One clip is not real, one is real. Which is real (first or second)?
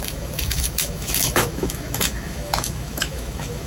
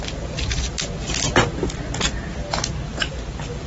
second